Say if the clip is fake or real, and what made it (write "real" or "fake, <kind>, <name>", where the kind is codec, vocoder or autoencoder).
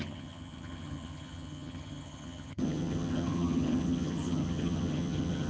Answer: fake, vocoder, HiFi-GAN